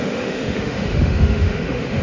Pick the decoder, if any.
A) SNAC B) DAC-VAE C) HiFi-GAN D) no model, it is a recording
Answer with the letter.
B